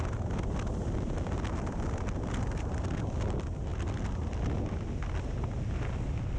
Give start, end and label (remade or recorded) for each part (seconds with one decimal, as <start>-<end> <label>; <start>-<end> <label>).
0.0-6.4 recorded